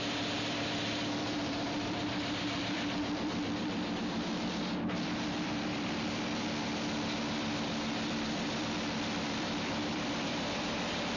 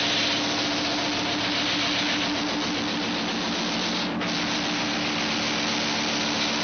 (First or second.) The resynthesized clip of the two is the first